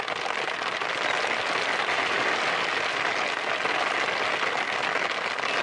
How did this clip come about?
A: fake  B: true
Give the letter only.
B